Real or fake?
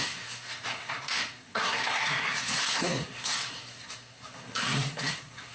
fake